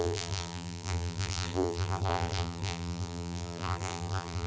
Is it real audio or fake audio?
fake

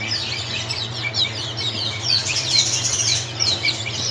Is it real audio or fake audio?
fake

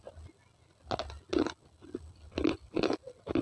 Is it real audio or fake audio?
real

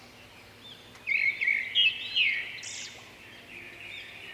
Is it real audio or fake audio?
real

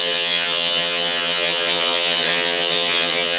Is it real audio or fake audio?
fake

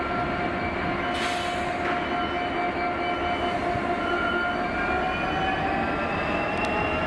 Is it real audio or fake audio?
real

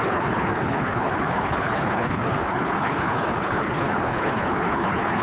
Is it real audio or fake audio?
fake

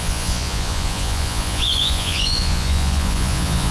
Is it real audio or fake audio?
fake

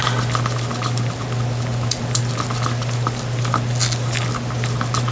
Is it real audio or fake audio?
real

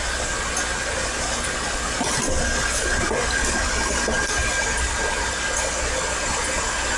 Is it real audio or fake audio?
real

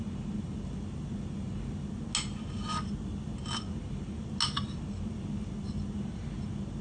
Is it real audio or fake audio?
real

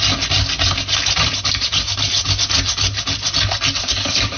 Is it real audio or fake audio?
real